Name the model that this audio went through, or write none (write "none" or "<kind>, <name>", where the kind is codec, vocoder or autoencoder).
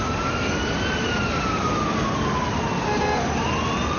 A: none